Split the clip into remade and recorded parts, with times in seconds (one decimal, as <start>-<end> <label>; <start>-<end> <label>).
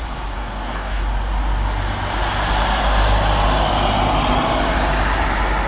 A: 0.0-0.4 recorded; 0.4-1.0 remade; 1.0-5.7 recorded